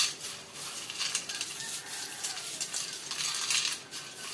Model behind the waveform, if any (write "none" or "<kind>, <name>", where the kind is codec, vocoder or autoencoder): none